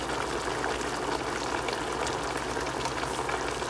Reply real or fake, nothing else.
real